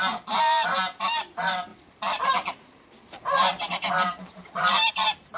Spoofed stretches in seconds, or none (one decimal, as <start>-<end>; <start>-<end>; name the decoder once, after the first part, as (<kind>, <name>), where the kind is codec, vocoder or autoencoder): 1.7-4.9 (vocoder, BigVGAN v2)